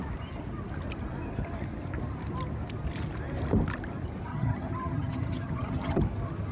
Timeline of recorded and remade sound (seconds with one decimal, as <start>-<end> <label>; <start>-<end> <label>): 0.0-4.3 recorded; 4.3-6.0 remade; 6.0-6.5 recorded